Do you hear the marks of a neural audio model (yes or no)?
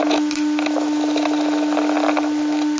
no